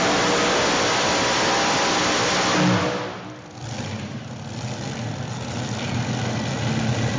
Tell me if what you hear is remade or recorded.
recorded